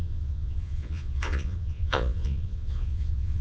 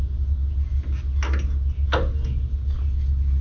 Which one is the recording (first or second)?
second